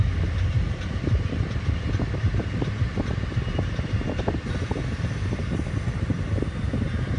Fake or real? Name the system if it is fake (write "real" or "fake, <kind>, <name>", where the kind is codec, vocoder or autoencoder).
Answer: real